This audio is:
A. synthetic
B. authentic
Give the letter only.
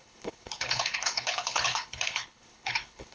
A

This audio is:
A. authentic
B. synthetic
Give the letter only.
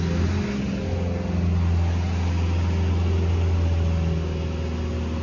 A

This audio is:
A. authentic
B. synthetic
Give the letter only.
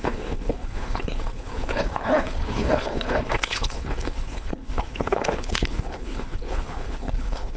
B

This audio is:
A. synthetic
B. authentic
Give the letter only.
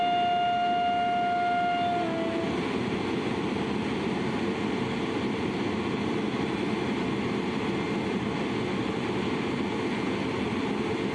B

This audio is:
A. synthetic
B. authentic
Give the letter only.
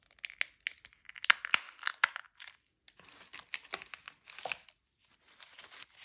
B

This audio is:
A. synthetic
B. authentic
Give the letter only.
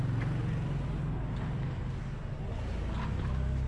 B